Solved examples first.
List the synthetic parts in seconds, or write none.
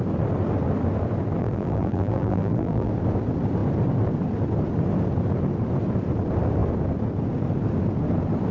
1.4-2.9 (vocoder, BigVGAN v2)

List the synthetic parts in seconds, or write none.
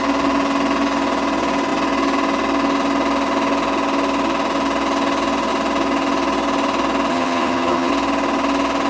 7.1-7.9 (vocoder, HiFi-GAN)